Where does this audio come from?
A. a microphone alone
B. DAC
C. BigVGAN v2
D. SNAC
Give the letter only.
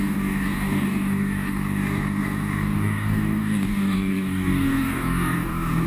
B